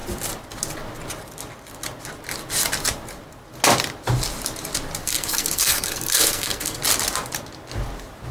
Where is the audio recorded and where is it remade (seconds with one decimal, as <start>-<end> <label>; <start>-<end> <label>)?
0.0-5.0 recorded; 5.0-6.8 remade; 6.8-8.3 recorded